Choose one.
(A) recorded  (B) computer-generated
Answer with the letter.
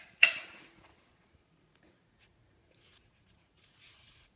B